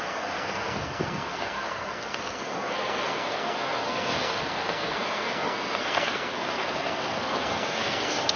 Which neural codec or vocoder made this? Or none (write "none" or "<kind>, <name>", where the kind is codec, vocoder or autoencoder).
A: codec, SNAC